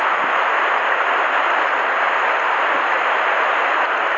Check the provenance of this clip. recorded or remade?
recorded